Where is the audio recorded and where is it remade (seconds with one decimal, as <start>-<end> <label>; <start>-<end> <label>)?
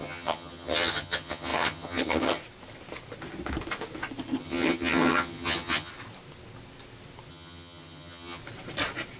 0.0-2.4 remade; 2.4-4.4 recorded; 4.4-5.9 remade; 5.9-7.3 recorded; 7.3-8.4 remade; 8.4-9.2 recorded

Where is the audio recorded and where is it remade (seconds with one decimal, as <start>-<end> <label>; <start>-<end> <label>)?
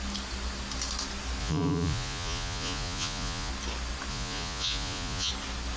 0.0-1.4 recorded; 1.4-3.5 remade; 3.5-4.1 recorded; 4.1-5.3 remade; 5.3-5.8 recorded